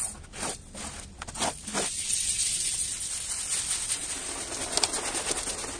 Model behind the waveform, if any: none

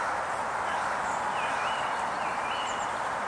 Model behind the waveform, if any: none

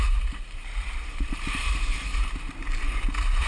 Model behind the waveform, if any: vocoder, BigVGAN v2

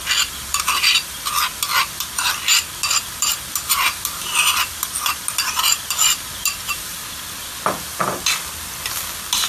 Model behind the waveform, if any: none